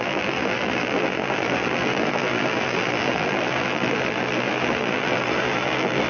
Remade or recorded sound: remade